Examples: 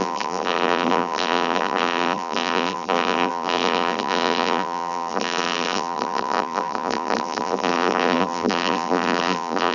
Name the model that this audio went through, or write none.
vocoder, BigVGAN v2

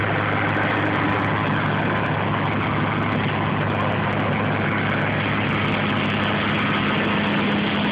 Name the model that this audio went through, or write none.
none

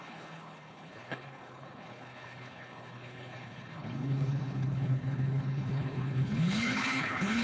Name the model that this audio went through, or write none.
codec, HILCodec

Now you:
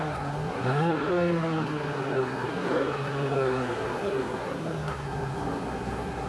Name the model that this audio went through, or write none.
codec, SNAC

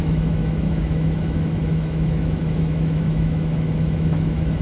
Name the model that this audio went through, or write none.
autoencoder, DAC-VAE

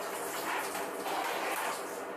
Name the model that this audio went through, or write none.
none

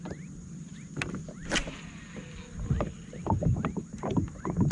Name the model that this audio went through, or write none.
none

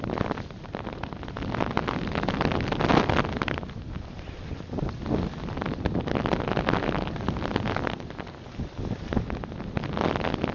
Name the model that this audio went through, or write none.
none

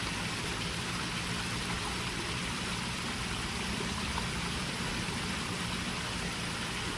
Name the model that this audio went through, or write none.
vocoder, BigVGAN v2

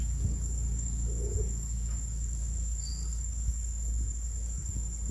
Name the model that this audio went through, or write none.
codec, DAC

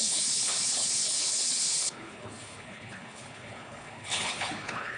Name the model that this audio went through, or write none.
codec, HILCodec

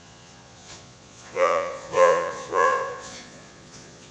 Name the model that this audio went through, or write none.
vocoder, Vocos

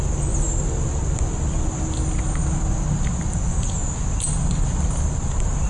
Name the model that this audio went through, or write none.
none